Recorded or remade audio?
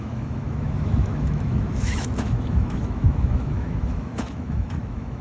remade